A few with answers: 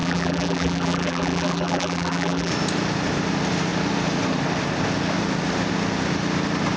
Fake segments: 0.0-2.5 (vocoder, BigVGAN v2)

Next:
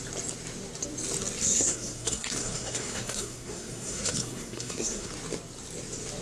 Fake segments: 1.4-5.1 (codec, SNAC)

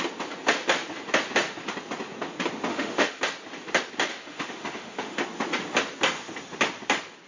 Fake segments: 2.7-3.2 (autoencoder, DAC-VAE); 4.1-5.2

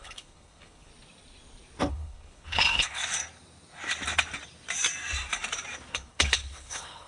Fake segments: 0.0-0.9 (codec, HILCodec); 1.9-3.0; 5.9-7.1